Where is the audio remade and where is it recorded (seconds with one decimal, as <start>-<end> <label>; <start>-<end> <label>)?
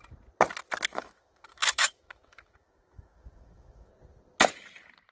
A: 0.0-0.9 recorded; 0.9-3.9 remade; 3.9-5.1 recorded